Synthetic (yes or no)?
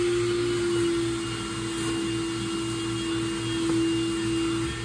no